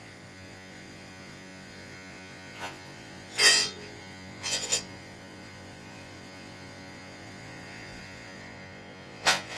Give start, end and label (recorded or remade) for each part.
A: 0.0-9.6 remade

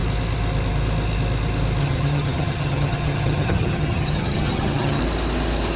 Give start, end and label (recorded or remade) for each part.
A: 0.0-1.8 recorded; 1.8-5.0 remade; 5.0-5.8 recorded

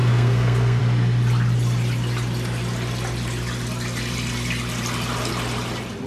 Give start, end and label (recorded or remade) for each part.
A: 0.0-0.8 remade; 0.8-6.1 recorded

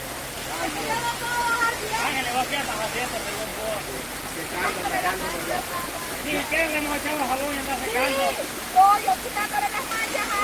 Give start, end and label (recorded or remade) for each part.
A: 0.0-1.3 recorded; 1.3-2.2 remade; 2.2-3.5 recorded; 3.5-5.2 remade; 5.2-10.4 recorded

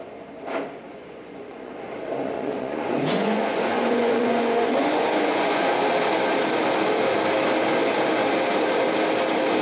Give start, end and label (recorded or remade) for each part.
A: 0.0-0.9 recorded; 0.9-5.7 remade; 5.7-9.6 recorded

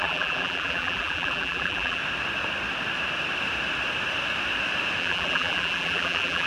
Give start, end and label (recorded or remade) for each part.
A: 0.0-2.0 remade; 2.0-5.0 recorded; 5.0-6.5 remade

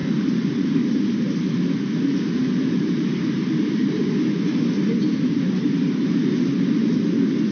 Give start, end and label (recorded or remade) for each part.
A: 0.0-4.0 remade; 4.0-7.5 recorded